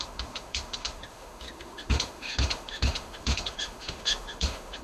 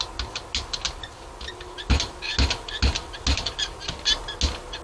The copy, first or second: first